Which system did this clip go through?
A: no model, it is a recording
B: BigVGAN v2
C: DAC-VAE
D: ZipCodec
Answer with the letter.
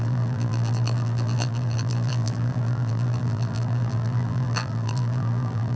B